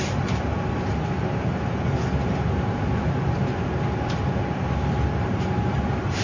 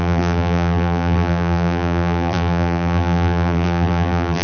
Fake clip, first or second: second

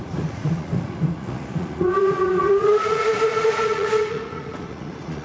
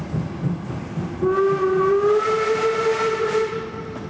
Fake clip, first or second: first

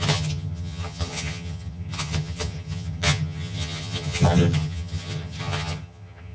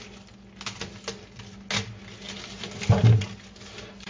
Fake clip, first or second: first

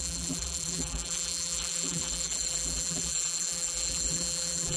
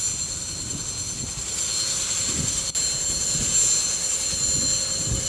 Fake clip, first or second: first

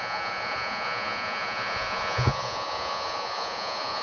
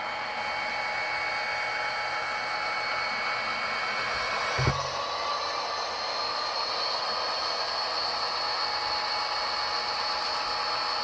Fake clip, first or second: first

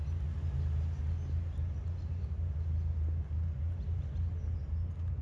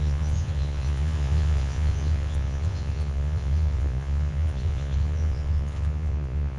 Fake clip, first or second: second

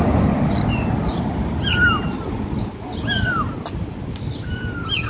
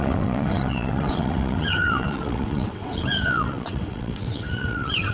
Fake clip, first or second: second